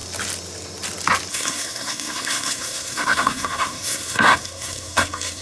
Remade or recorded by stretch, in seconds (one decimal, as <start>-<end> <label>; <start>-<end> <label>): 0.0-1.3 recorded; 1.3-5.4 remade